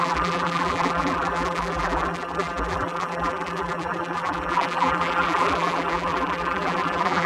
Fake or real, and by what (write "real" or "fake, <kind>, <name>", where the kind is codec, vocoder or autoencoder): fake, vocoder, BigVGAN v2